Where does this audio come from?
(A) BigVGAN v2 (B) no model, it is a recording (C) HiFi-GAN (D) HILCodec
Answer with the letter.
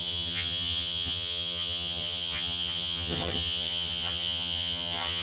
C